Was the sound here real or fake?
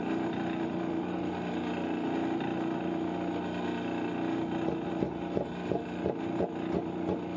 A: real